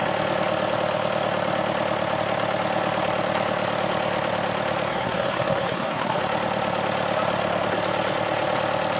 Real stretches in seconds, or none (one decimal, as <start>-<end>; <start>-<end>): 0.0-4.9; 6.2-9.0